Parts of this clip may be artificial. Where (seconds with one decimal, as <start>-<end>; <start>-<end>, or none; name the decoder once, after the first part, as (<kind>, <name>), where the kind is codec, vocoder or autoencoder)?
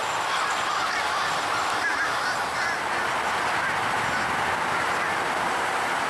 none